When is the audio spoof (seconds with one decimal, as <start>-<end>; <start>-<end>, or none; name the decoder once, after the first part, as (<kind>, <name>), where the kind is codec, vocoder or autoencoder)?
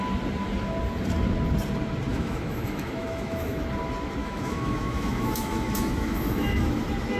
2.1-3.6 (autoencoder, DAC-VAE); 4.2-6.8